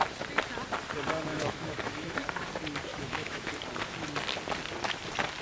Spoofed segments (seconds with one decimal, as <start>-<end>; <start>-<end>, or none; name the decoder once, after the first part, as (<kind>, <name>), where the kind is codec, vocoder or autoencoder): 1.3-2.1 (autoencoder, DAC-VAE); 2.9-3.5